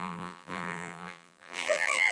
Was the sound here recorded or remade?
remade